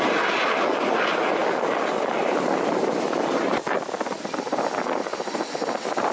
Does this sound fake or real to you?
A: real